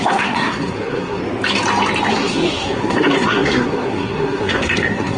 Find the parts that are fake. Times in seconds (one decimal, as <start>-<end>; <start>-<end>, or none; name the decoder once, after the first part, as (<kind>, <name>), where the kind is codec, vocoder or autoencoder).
0.0-1.2 (codec, SNAC); 2.1-5.2